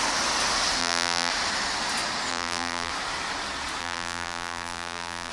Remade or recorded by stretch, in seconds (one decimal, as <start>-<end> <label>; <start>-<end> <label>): 0.0-0.8 recorded; 0.8-1.3 remade; 1.3-2.3 recorded; 2.3-2.9 remade; 2.9-3.8 recorded; 3.8-5.3 remade